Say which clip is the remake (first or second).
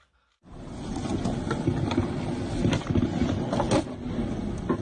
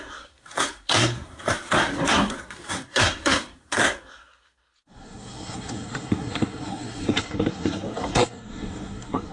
second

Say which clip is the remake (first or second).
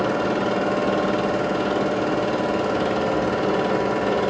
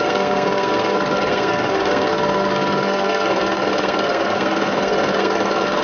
second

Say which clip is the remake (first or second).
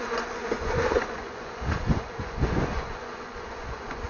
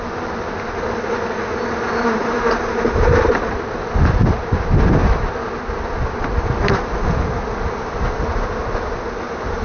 first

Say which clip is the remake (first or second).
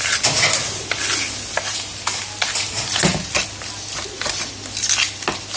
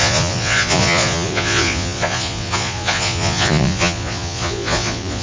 second